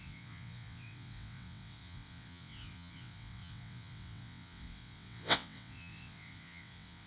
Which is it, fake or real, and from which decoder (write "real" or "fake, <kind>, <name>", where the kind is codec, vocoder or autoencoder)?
fake, vocoder, WaveNeXt